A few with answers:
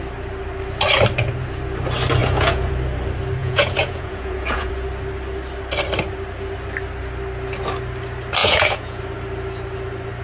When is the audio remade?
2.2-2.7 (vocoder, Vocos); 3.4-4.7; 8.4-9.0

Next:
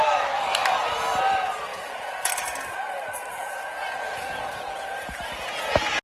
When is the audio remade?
1.7-2.3 (vocoder, Vocos); 3.4-6.0

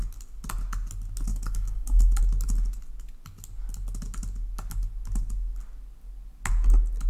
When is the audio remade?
1.3-2.2 (codec, DAC)